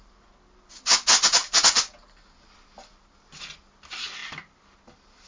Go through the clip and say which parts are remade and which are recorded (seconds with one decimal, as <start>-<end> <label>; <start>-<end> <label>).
0.0-5.3 recorded